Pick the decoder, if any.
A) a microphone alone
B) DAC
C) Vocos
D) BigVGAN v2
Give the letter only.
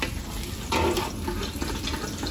A